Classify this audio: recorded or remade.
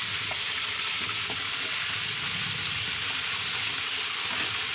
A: recorded